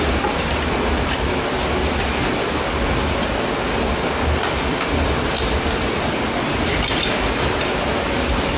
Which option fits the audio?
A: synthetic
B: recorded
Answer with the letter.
B